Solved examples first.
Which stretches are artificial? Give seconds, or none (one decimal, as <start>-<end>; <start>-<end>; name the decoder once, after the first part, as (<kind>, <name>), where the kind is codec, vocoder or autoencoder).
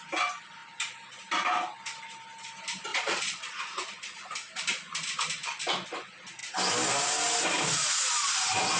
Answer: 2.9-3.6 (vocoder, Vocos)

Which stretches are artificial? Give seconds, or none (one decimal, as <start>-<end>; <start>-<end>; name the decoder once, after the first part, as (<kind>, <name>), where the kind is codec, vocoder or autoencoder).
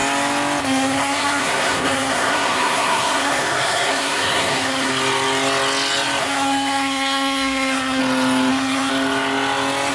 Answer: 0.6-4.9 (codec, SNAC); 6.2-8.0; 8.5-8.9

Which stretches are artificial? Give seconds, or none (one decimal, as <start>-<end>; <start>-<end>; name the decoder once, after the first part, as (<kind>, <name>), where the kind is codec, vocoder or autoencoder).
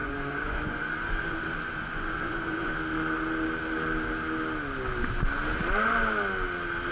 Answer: 0.0-2.7 (vocoder, Vocos)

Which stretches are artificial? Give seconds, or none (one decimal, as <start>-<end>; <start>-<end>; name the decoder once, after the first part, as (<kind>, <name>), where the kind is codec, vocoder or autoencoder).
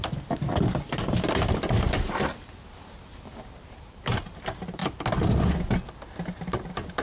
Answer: 0.0-0.4 (vocoder, BigVGAN v2); 3.0-4.8; 6.4-7.0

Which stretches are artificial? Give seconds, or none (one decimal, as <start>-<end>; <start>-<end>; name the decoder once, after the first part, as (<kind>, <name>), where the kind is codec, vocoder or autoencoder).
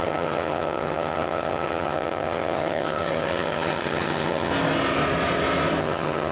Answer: 0.0-4.5 (vocoder, HiFi-GAN); 5.8-6.3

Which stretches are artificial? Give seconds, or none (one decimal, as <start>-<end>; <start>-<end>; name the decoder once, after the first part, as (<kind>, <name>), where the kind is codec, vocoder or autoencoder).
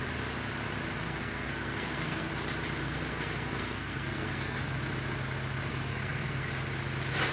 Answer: 1.0-2.3 (codec, SNAC); 2.8-4.8; 5.7-6.5